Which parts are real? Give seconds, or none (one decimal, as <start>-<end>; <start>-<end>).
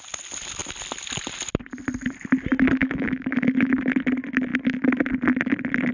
0.0-2.8; 3.7-5.9